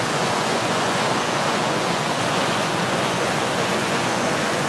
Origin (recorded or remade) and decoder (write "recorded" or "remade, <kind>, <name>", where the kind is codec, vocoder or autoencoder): remade, vocoder, Vocos